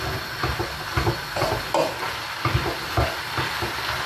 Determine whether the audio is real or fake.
real